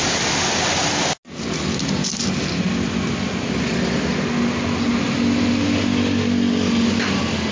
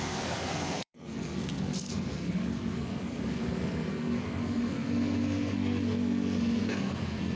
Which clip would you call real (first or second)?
first